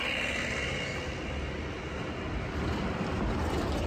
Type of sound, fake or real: real